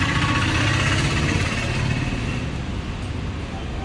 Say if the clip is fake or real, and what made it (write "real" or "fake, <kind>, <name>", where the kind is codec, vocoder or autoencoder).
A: real